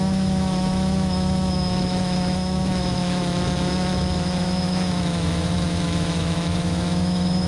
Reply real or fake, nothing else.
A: fake